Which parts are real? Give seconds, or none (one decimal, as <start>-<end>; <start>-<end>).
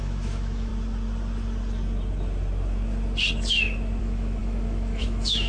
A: 0.7-4.0